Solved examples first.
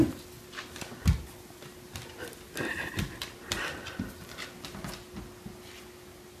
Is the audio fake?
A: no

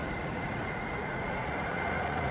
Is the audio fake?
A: yes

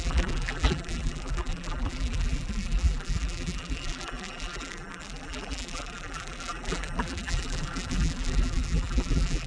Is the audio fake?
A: yes